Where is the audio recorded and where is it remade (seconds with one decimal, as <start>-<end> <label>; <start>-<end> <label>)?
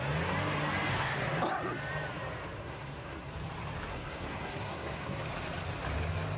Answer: 0.0-0.9 recorded; 0.9-1.4 remade; 1.4-2.6 recorded; 2.6-3.3 remade; 3.3-3.9 recorded; 3.9-5.2 remade; 5.2-6.4 recorded